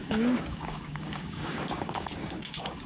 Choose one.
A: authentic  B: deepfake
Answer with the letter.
B